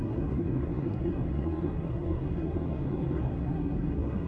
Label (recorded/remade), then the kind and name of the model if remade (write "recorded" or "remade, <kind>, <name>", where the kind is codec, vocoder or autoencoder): remade, codec, SNAC